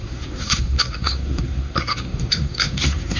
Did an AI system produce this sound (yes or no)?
yes